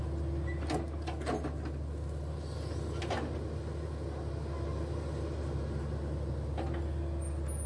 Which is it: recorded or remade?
recorded